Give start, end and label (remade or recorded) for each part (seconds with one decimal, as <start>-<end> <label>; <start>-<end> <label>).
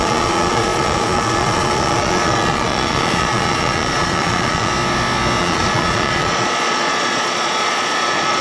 0.0-4.7 remade; 4.7-5.4 recorded; 5.4-8.4 remade